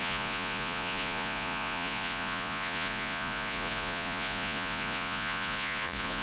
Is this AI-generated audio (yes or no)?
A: yes